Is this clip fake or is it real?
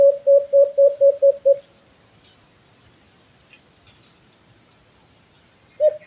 real